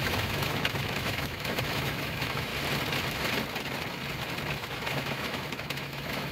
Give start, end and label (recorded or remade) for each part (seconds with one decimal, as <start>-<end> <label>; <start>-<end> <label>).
0.0-2.5 remade; 2.5-4.5 recorded; 4.5-6.3 remade

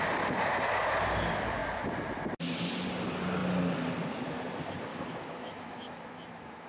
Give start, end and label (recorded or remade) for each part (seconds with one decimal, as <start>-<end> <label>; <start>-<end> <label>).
0.0-4.9 recorded; 4.9-6.7 remade